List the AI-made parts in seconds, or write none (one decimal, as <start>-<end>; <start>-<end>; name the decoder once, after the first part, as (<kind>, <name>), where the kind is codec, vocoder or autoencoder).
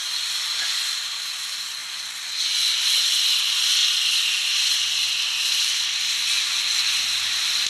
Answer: none